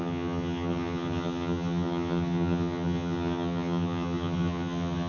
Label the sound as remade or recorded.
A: remade